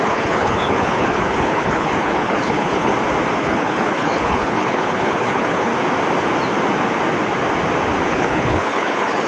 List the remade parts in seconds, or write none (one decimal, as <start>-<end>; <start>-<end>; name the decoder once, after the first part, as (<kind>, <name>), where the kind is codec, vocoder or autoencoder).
0.0-2.9 (codec, HILCodec); 3.4-5.7; 8.1-9.3